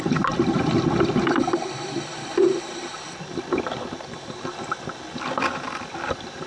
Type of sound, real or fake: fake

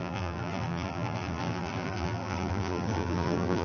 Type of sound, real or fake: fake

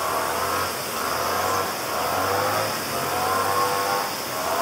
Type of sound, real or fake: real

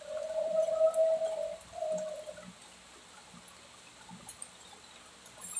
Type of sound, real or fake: real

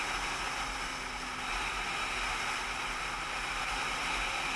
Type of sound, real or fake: real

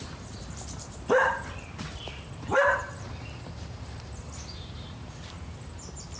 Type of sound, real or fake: fake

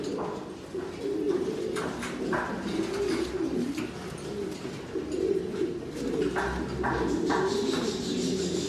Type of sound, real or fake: real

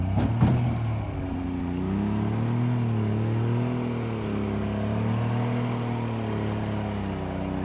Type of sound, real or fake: real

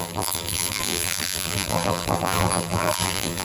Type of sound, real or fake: fake